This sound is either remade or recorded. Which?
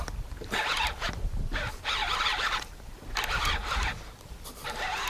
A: recorded